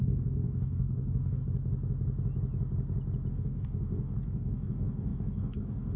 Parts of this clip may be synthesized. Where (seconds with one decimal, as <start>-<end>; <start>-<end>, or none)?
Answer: 0.0-1.4; 3.3-6.0